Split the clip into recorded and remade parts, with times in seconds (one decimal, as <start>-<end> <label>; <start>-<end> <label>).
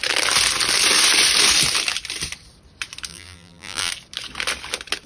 0.0-3.1 recorded; 3.1-3.9 remade; 3.9-5.1 recorded